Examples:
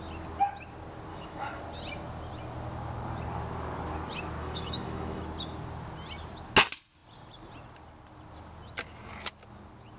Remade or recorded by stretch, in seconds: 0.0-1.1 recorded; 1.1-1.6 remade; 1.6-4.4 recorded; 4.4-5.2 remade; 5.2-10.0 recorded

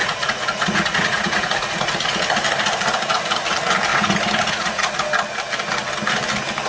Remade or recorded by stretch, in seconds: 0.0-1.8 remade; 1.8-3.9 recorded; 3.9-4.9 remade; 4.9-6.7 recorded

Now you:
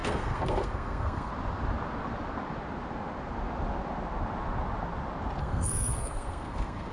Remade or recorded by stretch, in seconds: 0.0-1.3 remade; 1.3-5.4 recorded; 5.4-6.9 remade

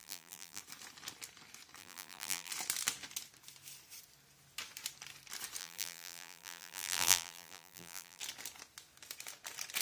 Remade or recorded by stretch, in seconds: 0.0-0.6 remade; 0.6-1.8 recorded; 1.8-2.5 remade; 2.5-5.6 recorded; 5.6-8.2 remade; 8.2-9.8 recorded